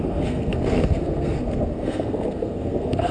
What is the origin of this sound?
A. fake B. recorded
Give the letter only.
A